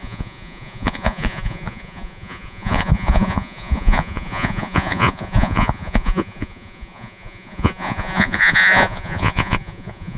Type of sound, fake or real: fake